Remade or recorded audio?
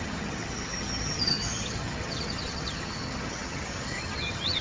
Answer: remade